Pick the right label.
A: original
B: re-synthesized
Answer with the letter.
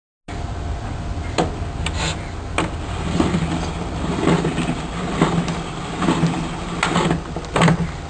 A